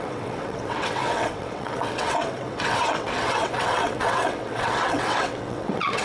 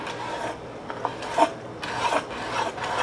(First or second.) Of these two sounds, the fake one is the first